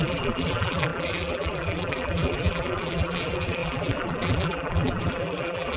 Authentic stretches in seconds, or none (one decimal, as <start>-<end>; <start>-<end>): none